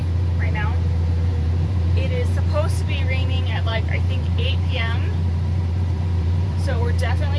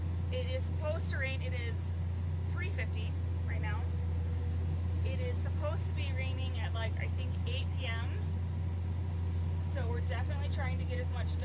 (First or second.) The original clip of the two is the second